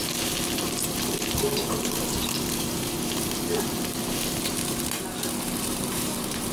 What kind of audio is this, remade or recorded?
remade